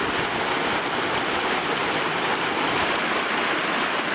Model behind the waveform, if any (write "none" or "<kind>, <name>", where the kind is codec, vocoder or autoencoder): none